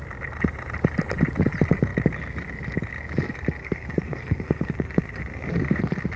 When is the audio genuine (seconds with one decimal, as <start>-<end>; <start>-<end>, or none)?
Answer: 0.0-3.6; 5.8-6.2